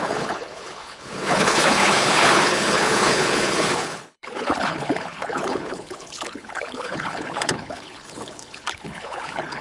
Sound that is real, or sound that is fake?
fake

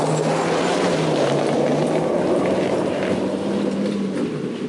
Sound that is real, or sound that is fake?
real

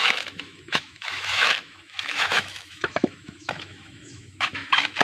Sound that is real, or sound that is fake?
fake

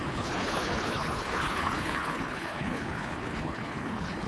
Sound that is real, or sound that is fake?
fake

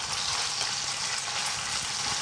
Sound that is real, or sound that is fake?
real